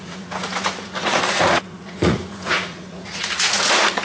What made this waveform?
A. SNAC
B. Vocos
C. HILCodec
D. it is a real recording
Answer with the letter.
B